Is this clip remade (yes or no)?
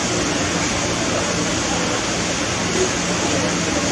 no